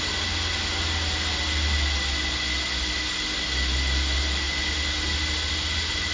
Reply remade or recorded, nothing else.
recorded